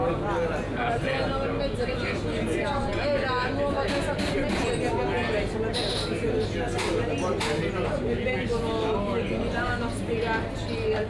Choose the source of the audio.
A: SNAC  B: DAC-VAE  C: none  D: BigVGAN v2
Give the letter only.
C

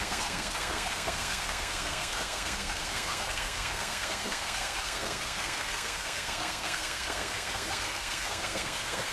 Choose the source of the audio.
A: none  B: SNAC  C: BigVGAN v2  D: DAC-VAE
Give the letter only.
B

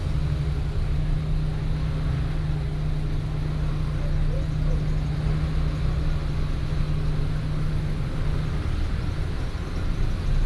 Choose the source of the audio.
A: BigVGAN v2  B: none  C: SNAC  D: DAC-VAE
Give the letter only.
B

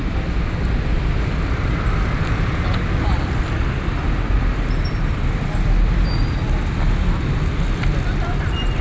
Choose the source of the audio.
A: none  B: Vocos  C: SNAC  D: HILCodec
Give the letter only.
A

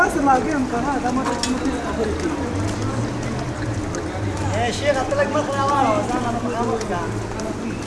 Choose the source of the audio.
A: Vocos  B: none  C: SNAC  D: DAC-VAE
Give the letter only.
B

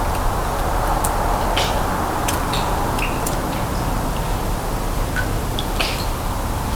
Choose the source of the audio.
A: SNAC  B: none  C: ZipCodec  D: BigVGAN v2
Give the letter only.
B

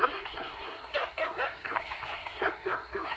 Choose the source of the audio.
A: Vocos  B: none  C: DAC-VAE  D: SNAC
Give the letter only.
D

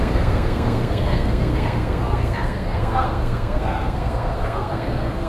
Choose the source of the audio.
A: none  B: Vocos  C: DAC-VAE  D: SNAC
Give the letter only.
D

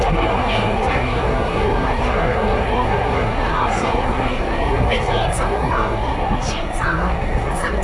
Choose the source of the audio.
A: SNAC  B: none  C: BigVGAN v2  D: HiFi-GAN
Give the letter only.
A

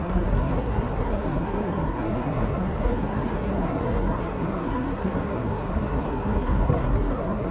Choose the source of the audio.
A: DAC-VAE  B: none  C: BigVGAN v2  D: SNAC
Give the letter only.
D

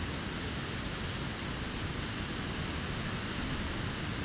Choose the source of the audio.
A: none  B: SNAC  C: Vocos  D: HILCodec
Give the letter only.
A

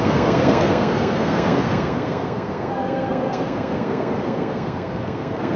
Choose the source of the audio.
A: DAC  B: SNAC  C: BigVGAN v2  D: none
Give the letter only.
B